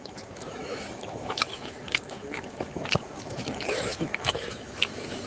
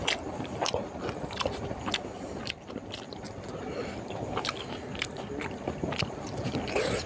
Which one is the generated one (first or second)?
first